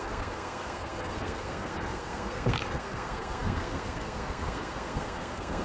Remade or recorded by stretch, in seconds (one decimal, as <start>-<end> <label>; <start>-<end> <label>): 0.0-5.6 remade